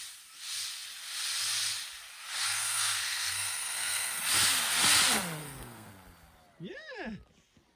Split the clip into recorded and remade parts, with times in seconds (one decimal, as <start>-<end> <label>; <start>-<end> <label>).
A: 0.0-2.5 recorded; 2.5-4.2 remade; 4.2-5.4 recorded; 5.4-5.9 remade; 5.9-7.8 recorded